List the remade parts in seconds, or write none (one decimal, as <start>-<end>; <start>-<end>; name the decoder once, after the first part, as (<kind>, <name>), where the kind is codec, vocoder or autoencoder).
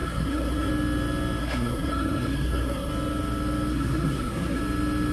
0.0-0.7 (codec, SNAC); 1.4-2.9; 3.7-4.6